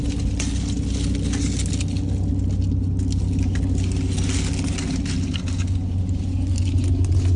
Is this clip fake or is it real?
real